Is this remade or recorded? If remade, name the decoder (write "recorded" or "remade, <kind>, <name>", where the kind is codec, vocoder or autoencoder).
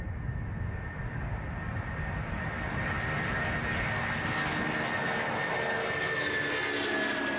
recorded